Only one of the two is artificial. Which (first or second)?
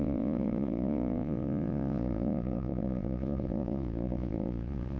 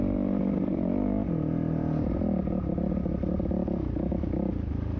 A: first